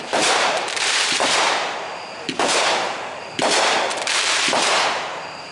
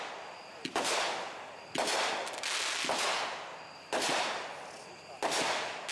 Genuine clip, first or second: second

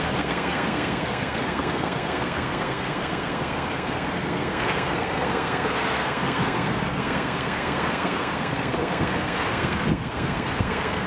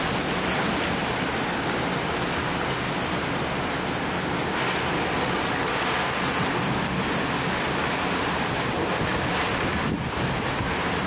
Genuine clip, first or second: second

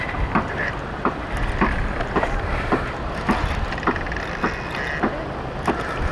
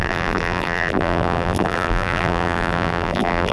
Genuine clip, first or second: first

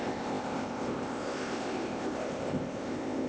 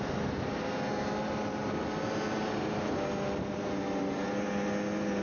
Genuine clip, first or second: second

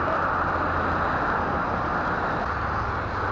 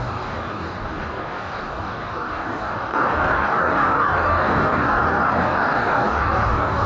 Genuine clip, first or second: first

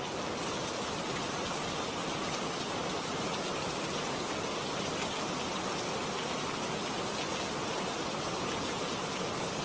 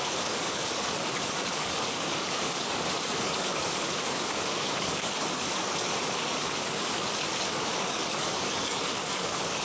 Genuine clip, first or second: first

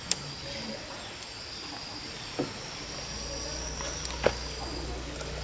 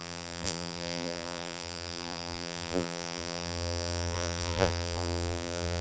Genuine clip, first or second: first